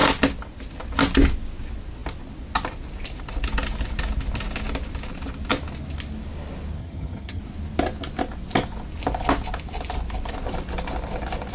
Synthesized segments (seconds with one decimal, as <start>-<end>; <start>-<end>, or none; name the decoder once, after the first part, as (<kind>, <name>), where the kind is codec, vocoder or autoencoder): 6.8-7.4 (vocoder, HiFi-GAN)